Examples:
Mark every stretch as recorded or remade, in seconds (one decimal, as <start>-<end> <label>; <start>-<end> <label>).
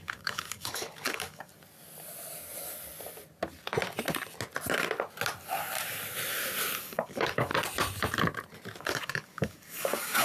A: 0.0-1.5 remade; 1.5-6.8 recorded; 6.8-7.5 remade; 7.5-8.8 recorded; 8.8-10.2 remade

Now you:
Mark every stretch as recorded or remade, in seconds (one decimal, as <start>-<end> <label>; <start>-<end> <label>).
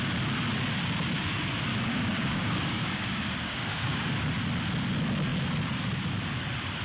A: 0.0-1.7 recorded; 1.7-4.1 remade; 4.1-6.8 recorded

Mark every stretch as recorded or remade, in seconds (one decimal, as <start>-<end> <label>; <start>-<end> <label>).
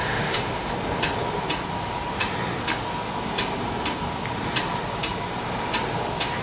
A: 0.0-0.7 remade; 0.7-6.4 recorded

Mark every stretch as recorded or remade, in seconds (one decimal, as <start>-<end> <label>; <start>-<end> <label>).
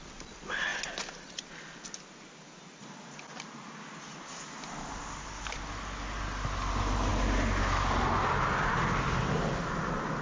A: 0.0-10.2 recorded